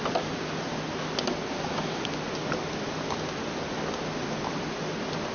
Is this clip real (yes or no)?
yes